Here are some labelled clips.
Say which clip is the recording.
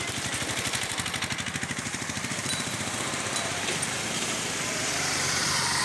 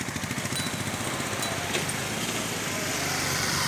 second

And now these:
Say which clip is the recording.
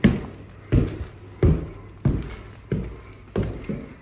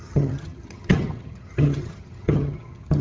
first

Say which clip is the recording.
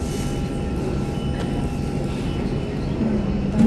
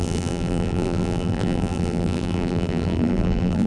first